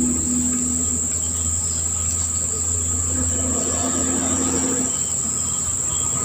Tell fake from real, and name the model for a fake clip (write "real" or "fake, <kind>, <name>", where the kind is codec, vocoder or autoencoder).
real